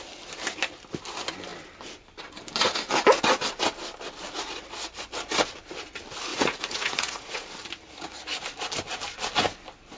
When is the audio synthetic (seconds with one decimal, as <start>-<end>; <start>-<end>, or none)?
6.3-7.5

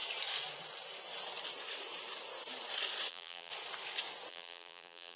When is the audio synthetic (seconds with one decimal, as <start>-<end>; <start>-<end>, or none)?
3.1-3.5; 4.3-5.2

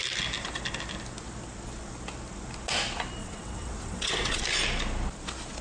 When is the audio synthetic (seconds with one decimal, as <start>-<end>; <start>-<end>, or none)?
3.2-4.4

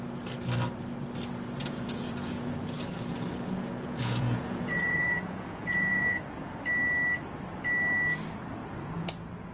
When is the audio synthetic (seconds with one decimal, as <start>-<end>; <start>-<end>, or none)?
1.6-6.2; 8.6-9.5

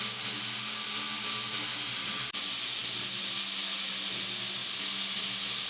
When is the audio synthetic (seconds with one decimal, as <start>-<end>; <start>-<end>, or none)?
none